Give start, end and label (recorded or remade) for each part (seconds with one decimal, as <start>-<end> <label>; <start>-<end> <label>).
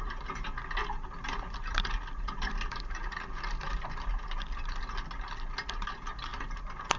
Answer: 0.0-0.8 recorded; 0.8-4.8 remade; 4.8-6.3 recorded; 6.3-7.0 remade